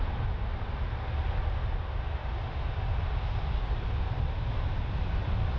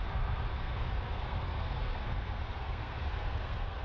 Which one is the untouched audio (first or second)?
first